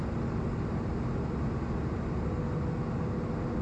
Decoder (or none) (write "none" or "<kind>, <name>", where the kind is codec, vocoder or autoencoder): none